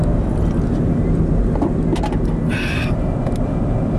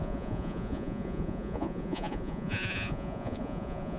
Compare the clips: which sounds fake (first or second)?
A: second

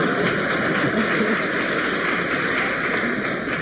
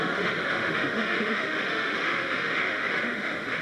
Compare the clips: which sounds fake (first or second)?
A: second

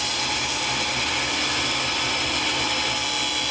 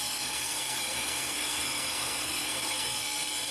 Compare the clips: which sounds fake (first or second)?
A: second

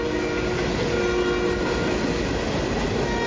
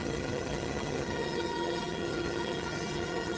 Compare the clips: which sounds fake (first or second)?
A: second